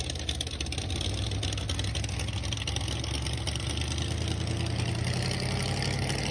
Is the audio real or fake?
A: real